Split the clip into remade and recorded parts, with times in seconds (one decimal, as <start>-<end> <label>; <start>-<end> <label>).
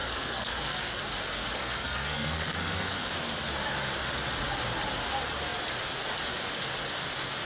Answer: 0.0-1.0 remade; 1.0-1.6 recorded; 1.6-3.1 remade; 3.1-7.4 recorded